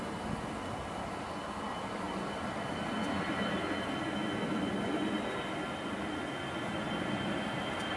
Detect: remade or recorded recorded